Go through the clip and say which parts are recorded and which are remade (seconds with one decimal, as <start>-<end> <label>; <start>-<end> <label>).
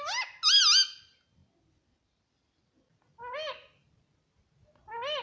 0.0-5.2 recorded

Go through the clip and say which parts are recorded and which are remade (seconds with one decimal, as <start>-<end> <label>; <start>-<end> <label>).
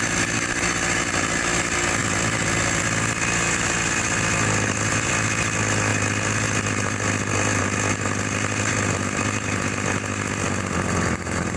0.0-11.6 recorded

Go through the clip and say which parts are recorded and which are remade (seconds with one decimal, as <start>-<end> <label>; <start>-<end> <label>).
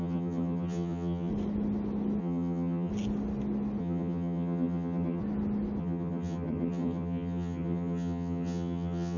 0.0-1.3 remade; 1.3-2.2 recorded; 2.2-2.9 remade; 2.9-3.8 recorded; 3.8-5.2 remade; 5.2-5.8 recorded; 5.8-9.2 remade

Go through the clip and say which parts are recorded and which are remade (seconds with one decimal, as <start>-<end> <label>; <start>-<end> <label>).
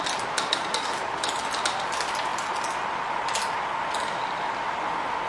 0.0-5.3 recorded